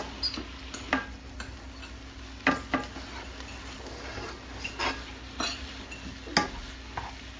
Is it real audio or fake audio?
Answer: real